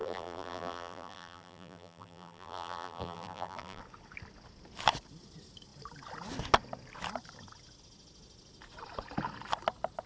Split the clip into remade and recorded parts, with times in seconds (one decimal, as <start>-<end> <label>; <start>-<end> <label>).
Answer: 0.0-3.8 remade; 3.8-10.1 recorded